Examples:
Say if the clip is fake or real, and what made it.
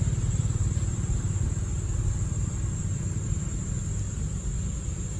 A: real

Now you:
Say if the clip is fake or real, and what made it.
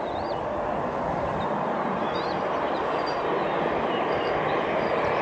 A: real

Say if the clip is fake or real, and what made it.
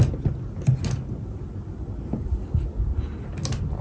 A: real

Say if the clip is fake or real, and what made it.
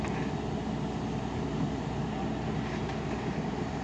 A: fake, vocoder, BigVGAN v2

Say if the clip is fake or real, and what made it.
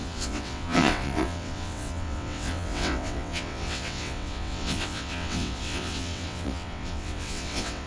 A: fake, vocoder, WaveNeXt